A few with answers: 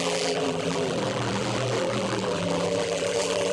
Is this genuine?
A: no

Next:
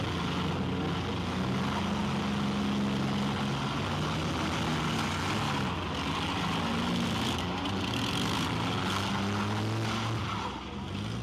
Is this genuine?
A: yes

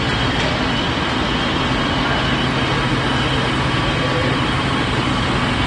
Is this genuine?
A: yes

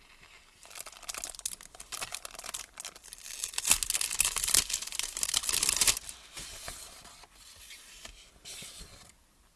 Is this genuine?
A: yes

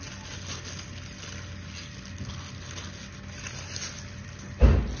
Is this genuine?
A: yes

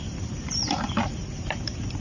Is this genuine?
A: no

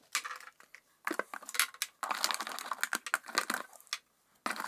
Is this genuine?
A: yes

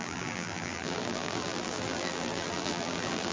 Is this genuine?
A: no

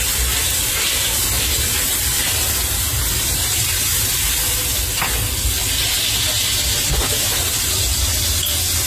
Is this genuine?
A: no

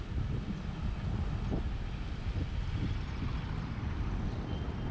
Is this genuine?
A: yes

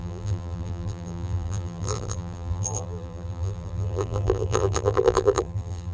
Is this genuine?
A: no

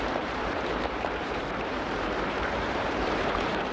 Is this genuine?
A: no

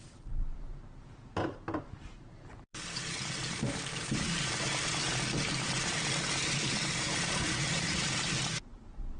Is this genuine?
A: no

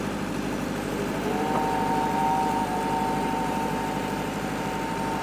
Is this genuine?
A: no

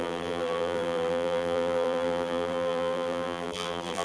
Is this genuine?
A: no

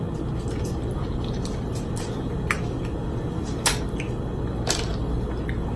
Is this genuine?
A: yes